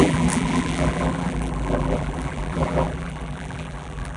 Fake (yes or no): yes